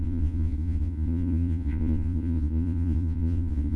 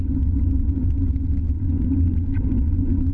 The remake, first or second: first